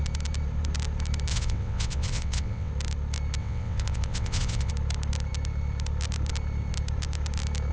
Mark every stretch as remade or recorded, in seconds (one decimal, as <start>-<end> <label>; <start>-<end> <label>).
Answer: 0.0-1.3 recorded; 1.3-2.7 remade; 2.7-3.4 recorded; 3.4-4.7 remade; 4.7-7.7 recorded